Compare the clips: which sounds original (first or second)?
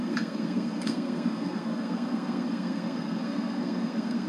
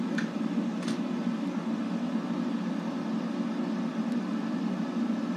second